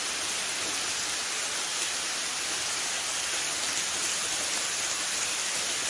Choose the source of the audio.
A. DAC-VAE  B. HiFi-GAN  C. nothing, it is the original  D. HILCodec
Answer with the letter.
C